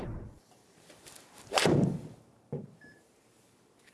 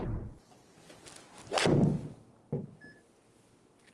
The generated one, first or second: first